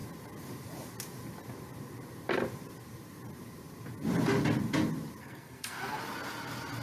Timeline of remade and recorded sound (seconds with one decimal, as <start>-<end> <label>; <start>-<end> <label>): 0.0-5.2 recorded; 5.2-6.0 remade; 6.0-6.8 recorded